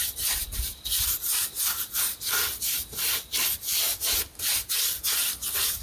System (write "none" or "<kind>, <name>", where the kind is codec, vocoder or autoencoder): none